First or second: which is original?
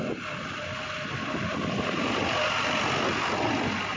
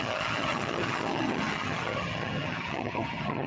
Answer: first